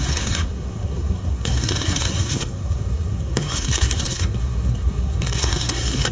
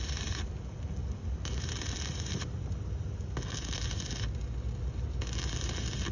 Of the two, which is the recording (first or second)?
second